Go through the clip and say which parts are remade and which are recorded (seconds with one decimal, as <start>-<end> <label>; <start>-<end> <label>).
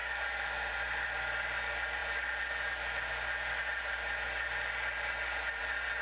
0.0-6.0 recorded